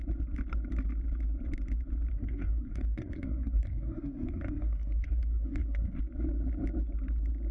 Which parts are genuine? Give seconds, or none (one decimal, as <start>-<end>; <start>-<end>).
0.0-2.1; 6.0-7.5